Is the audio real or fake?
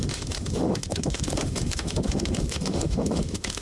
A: fake